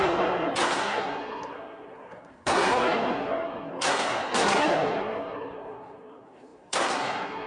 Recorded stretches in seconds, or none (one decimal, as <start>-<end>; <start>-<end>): none